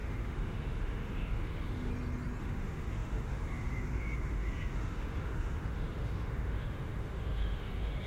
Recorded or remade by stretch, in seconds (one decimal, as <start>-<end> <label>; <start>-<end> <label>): 0.0-1.9 remade; 1.9-2.4 recorded; 2.4-8.1 remade